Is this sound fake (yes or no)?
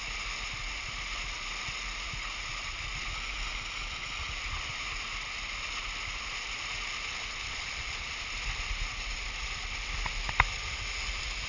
no